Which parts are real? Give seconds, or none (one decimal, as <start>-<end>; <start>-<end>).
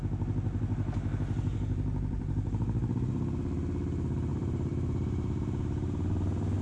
0.0-4.3